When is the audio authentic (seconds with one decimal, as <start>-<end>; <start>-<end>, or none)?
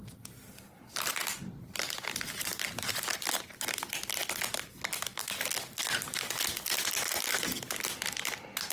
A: 0.0-8.7